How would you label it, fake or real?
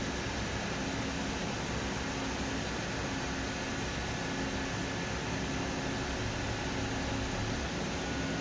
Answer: real